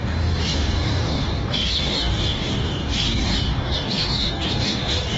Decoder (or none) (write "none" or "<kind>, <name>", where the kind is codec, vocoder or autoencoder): codec, DAC